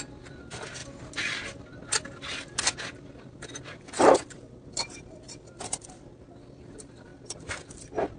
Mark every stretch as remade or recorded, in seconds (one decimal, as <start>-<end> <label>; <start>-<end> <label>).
0.0-0.8 remade; 0.8-4.0 recorded; 4.0-8.2 remade